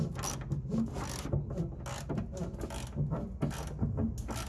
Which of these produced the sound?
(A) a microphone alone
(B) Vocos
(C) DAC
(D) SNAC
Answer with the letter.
A